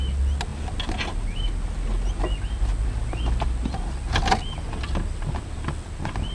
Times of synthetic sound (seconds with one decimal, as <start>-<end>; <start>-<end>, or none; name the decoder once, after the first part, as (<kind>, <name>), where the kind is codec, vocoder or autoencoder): none